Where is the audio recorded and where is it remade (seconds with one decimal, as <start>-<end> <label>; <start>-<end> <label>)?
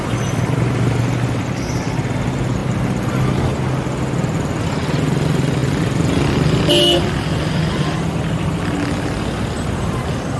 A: 0.0-10.4 recorded